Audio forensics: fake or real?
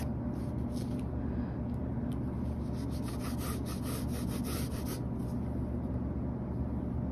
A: real